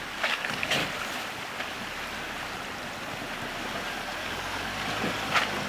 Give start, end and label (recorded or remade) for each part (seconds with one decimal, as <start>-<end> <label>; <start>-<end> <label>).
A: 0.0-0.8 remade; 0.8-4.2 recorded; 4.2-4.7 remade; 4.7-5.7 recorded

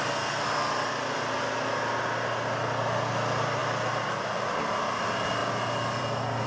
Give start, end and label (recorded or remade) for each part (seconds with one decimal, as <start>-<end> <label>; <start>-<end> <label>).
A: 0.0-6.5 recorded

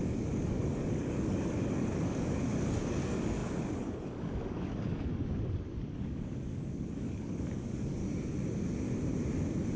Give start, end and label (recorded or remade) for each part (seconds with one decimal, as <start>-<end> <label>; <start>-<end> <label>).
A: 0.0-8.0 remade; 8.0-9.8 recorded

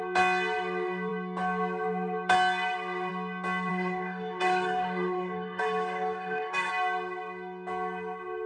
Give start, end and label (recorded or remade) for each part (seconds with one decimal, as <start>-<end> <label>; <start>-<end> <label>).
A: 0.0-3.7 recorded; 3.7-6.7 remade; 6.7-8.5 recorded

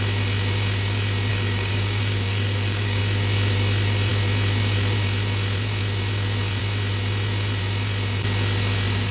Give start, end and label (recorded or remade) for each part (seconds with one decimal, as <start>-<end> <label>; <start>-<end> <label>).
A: 0.0-1.3 recorded; 1.3-3.0 remade; 3.0-9.1 recorded

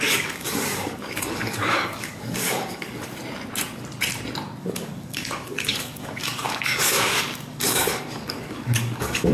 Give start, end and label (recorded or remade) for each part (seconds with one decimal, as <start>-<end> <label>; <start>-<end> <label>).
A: 0.0-3.2 remade; 3.2-4.6 recorded; 4.6-9.3 remade